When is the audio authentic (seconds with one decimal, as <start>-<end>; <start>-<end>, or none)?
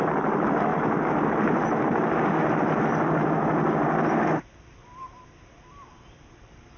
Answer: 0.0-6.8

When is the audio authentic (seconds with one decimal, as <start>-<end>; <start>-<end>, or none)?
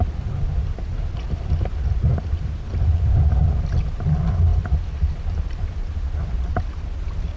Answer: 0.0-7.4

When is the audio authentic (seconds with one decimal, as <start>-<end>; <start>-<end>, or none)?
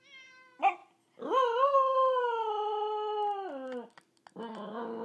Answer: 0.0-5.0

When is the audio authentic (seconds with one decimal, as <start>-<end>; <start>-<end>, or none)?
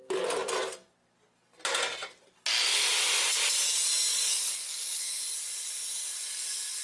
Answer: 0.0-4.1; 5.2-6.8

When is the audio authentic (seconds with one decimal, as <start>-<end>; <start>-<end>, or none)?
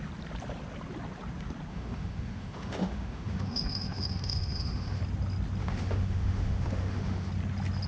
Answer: 0.0-1.7; 5.0-5.6; 7.3-7.9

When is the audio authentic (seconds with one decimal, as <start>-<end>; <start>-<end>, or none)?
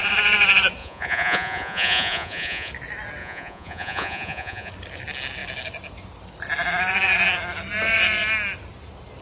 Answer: 0.0-0.8; 2.7-3.2; 4.7-9.2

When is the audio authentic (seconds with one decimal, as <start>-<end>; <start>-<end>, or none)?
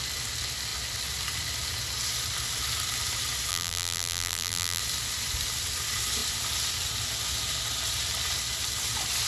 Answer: 0.0-3.5; 4.8-9.3